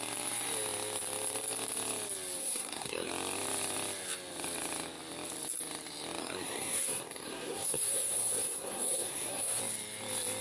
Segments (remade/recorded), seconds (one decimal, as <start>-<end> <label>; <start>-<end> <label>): 0.0-2.4 recorded; 2.4-3.1 remade; 3.1-6.2 recorded; 6.2-9.6 remade; 9.6-10.4 recorded